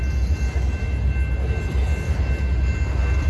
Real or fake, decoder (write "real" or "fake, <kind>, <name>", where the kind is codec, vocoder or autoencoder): real